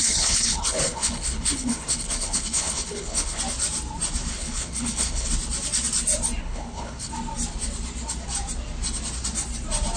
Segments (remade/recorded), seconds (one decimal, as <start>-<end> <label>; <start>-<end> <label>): 0.0-3.4 remade; 3.4-4.3 recorded; 4.3-5.3 remade; 5.3-6.4 recorded; 6.4-7.1 remade; 7.1-10.0 recorded